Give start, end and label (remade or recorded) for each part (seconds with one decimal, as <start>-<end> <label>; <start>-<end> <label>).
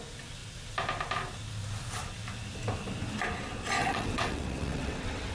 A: 0.0-3.8 recorded; 3.8-5.3 remade